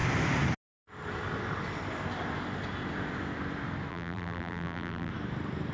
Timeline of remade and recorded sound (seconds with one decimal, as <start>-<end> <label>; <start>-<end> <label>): 0.0-3.9 recorded; 3.9-5.1 remade; 5.1-5.7 recorded

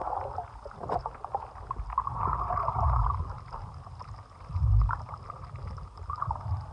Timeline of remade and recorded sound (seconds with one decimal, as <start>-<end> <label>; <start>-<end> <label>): 0.0-6.7 recorded

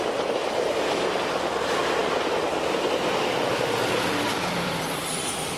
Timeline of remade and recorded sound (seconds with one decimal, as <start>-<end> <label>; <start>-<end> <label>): 0.0-0.4 recorded; 0.4-1.1 remade; 1.1-2.0 recorded; 2.0-5.6 remade